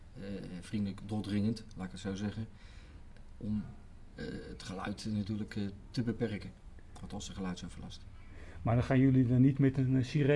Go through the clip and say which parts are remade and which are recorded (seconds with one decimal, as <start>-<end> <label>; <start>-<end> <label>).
0.0-2.4 recorded; 2.4-3.0 remade; 3.0-4.1 recorded; 4.1-6.7 remade; 6.7-10.4 recorded

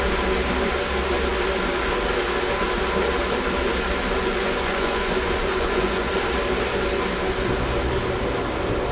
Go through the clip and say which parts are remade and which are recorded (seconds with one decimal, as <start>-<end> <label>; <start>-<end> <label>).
0.0-4.2 recorded; 4.2-6.1 remade; 6.1-8.9 recorded

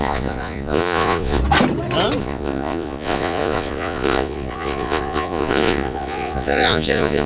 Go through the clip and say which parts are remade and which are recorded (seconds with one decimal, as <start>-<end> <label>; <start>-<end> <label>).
0.0-1.4 remade; 1.4-2.2 recorded; 2.2-7.3 remade

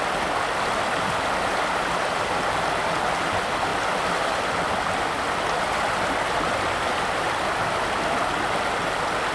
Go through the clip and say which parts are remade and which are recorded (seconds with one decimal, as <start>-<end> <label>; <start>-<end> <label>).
0.0-9.3 recorded

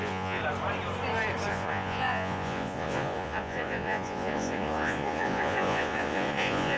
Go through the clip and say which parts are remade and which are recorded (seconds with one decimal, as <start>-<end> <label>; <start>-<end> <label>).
0.0-0.4 remade; 0.4-1.5 recorded; 1.5-6.8 remade